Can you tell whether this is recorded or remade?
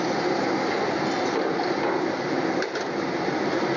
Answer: recorded